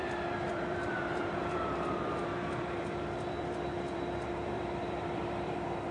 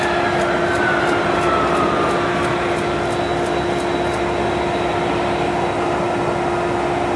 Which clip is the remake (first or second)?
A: first